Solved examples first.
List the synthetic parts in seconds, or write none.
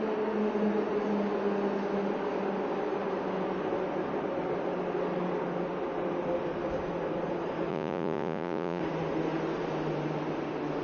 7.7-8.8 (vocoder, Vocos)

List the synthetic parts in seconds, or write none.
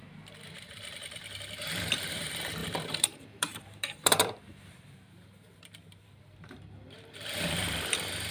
0.0-8.3 (vocoder, BigVGAN v2)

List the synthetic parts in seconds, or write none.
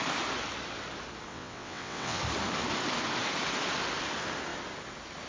1.3-2.2 (vocoder, WaveNeXt)